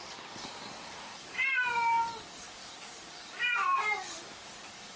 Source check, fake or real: fake